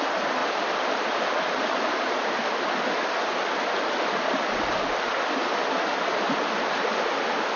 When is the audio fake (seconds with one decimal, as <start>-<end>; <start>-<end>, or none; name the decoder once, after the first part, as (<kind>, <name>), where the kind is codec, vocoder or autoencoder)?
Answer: none